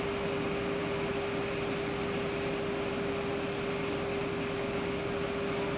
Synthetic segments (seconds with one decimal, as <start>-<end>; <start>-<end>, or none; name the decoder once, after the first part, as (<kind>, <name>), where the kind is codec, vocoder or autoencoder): none